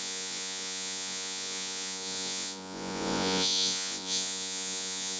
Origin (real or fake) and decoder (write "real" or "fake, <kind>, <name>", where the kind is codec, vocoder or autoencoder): fake, vocoder, Vocos